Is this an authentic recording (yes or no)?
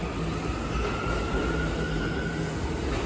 yes